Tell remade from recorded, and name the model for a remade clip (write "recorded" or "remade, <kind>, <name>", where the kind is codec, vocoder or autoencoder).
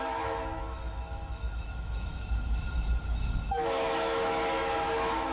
remade, autoencoder, DAC-VAE